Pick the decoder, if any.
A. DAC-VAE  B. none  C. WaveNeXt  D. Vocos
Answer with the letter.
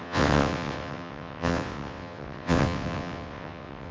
C